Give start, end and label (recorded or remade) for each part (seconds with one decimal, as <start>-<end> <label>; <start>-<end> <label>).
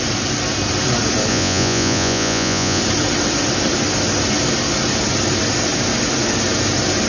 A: 0.0-1.3 recorded; 1.3-2.8 remade; 2.8-7.1 recorded